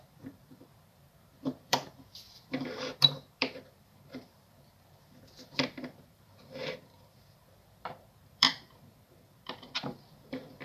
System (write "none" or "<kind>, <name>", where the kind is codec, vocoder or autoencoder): vocoder, BigVGAN v2